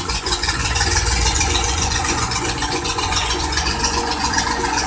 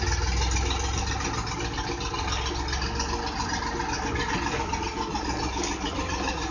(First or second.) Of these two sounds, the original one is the second